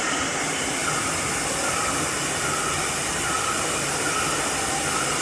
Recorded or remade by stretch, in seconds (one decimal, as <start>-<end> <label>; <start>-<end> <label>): 0.0-5.2 recorded